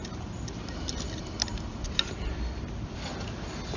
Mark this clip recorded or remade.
recorded